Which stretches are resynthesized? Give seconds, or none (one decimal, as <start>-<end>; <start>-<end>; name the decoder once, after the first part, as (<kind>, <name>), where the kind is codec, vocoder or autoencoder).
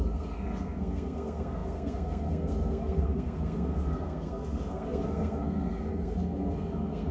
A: 0.0-7.1 (codec, SNAC)